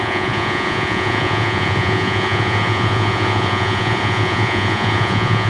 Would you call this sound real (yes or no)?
no